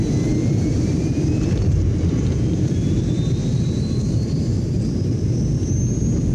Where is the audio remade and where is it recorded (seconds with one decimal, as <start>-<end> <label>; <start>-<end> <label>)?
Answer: 0.0-0.4 recorded; 0.4-3.0 remade; 3.0-3.4 recorded; 3.4-4.8 remade; 4.8-6.3 recorded